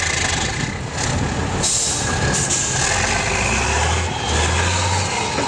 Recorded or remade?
recorded